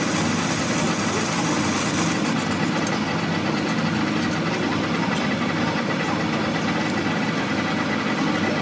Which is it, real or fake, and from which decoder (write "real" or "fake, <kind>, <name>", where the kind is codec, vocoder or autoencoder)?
real